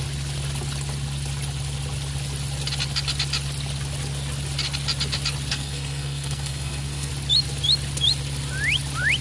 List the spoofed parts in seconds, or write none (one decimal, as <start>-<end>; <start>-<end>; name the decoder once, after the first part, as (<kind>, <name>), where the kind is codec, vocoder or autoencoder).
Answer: 5.5-7.1 (codec, SNAC)